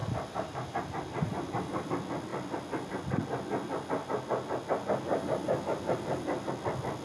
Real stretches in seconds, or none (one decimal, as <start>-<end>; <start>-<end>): 1.9-7.0